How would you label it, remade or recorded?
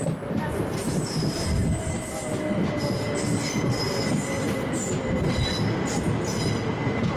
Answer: recorded